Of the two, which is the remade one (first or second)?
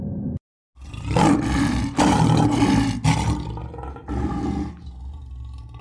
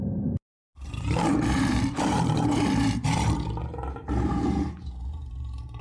second